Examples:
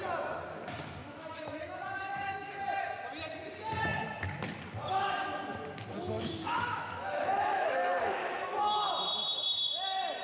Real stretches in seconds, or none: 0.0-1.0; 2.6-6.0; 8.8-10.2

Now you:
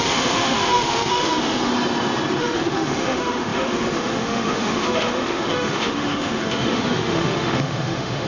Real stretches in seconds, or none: 1.7-2.4

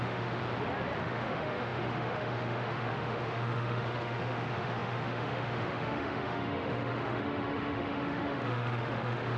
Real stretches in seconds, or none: 0.4-1.0

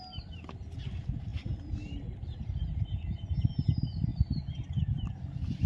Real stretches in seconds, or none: 0.0-5.7

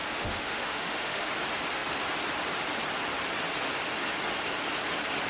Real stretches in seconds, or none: 1.3-5.3